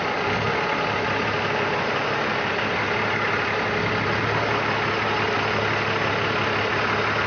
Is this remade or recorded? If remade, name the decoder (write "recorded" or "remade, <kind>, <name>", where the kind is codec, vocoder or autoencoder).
recorded